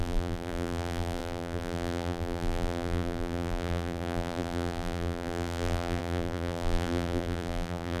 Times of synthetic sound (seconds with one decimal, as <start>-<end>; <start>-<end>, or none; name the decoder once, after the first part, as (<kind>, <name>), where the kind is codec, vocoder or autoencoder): 0.0-8.0 (vocoder, BigVGAN v2)